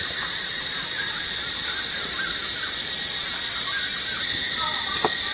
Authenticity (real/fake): fake